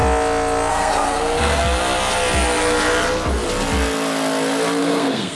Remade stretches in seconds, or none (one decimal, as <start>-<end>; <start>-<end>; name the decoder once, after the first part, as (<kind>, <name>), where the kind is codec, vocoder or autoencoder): 0.7-1.6 (codec, SNAC); 4.8-5.3